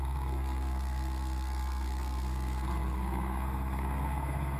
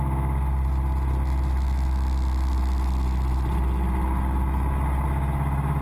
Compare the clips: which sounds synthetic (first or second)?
first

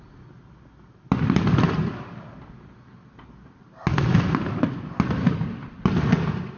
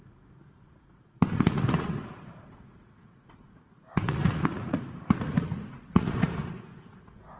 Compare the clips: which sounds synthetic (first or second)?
second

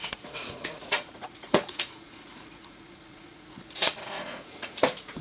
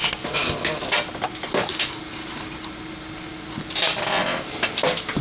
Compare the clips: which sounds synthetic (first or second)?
first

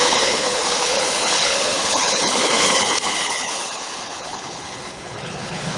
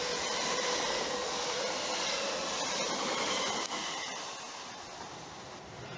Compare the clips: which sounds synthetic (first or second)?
first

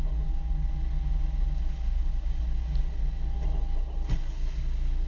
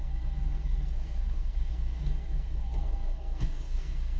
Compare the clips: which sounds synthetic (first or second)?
second